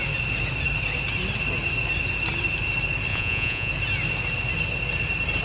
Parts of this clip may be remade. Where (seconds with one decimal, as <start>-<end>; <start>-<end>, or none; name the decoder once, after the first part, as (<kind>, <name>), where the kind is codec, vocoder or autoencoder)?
3.1-3.7 (vocoder, Vocos)